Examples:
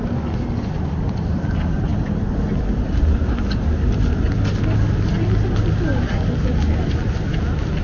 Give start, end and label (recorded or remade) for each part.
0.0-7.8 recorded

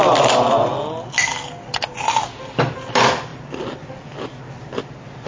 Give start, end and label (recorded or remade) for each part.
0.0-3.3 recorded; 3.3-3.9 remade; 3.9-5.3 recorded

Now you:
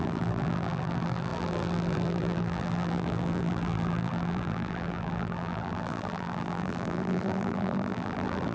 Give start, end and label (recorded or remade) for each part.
0.0-8.5 remade